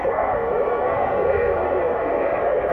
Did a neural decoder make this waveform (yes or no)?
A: yes